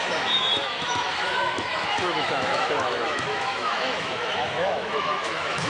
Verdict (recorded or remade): remade